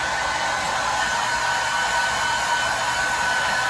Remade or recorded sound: recorded